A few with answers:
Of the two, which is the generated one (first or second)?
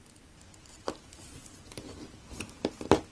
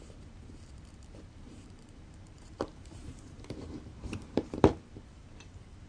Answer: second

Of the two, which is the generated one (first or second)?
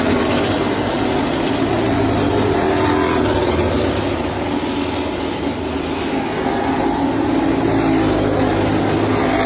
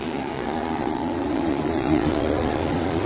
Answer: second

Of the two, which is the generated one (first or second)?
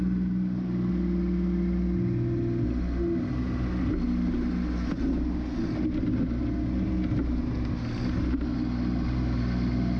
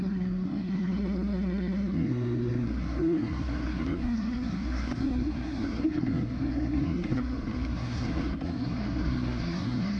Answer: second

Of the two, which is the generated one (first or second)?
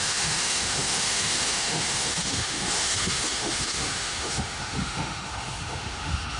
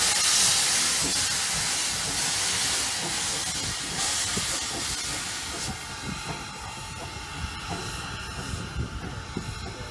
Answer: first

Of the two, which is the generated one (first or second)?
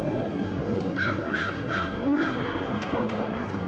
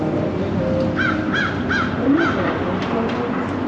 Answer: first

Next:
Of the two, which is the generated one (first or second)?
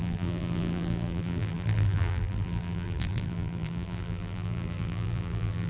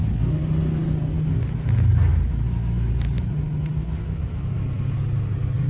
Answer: first